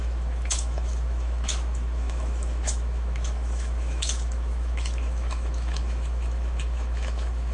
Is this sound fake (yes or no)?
yes